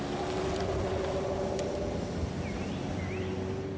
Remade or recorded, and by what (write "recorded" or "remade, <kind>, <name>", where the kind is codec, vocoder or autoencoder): recorded